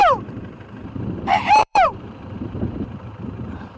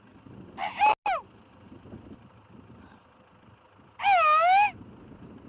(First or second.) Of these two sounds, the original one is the second